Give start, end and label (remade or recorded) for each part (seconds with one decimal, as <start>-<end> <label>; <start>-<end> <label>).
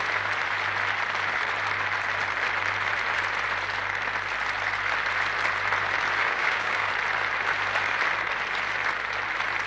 0.0-6.2 recorded; 6.2-6.9 remade; 6.9-9.7 recorded